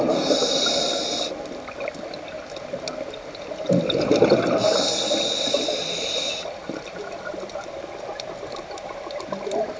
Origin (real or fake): real